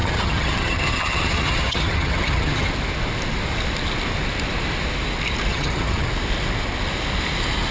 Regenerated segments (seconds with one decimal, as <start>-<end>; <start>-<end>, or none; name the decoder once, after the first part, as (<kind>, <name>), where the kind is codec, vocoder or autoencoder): 0.0-2.7 (vocoder, HiFi-GAN); 5.5-6.1